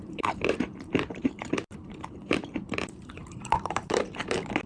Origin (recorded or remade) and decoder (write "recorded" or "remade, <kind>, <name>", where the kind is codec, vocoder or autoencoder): remade, vocoder, BigVGAN v2